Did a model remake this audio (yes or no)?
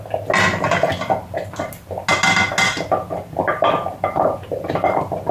no